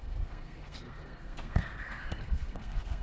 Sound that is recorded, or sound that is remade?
remade